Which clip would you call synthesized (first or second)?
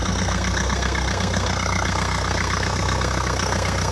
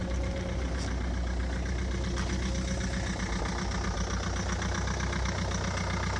first